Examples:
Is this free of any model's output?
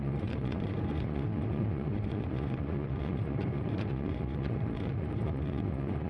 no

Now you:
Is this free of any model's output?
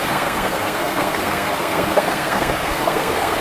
no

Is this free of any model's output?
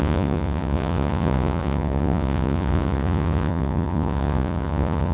no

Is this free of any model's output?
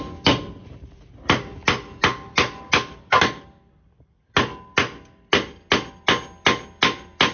yes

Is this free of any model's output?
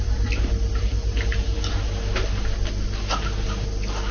yes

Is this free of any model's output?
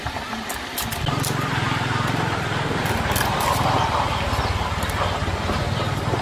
yes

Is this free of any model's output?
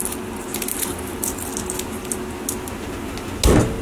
yes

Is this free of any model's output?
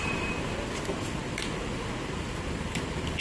yes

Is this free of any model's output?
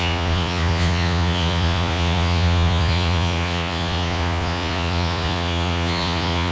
no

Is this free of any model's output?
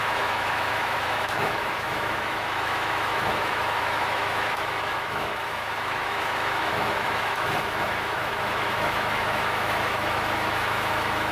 no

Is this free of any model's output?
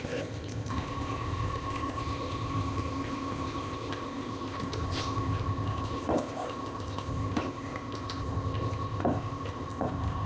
no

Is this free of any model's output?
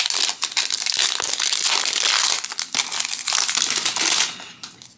yes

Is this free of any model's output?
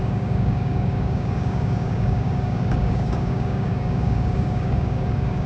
no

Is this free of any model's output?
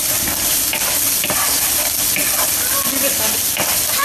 yes